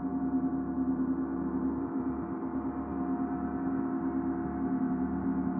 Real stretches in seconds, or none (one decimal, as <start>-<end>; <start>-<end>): 0.0-5.6